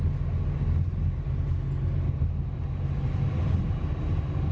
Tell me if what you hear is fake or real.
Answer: real